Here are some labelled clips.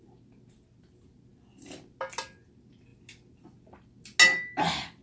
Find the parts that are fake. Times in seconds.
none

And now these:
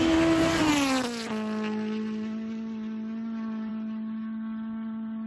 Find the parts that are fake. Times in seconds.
none

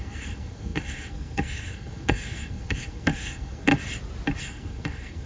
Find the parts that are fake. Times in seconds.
0.0-3.7 (codec, SNAC); 4.4-5.3